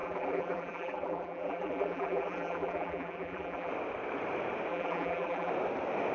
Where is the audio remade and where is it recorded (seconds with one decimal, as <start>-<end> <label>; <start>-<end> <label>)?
0.0-3.7 remade; 3.7-4.7 recorded; 4.7-5.5 remade; 5.5-6.1 recorded